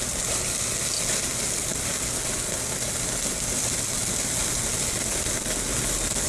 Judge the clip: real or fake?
real